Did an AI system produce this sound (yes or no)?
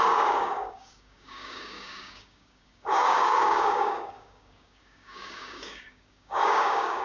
yes